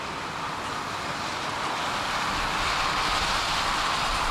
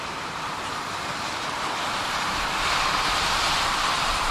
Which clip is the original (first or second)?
first